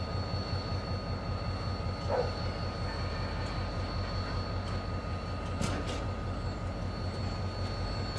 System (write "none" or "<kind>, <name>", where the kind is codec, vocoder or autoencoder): none